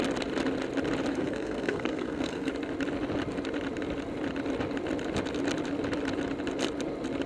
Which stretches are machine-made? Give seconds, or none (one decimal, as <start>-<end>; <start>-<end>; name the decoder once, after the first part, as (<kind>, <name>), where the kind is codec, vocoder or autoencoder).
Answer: 1.1-2.5 (codec, SNAC)